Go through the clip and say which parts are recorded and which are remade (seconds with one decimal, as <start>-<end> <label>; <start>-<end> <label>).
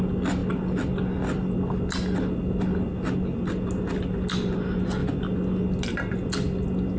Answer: 0.0-7.0 recorded